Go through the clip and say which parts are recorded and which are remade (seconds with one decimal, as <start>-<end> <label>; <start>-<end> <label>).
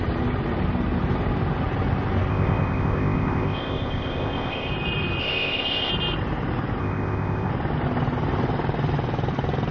0.0-2.3 recorded; 2.3-4.7 remade; 4.7-5.2 recorded; 5.2-5.9 remade; 5.9-6.8 recorded; 6.8-7.5 remade; 7.5-9.7 recorded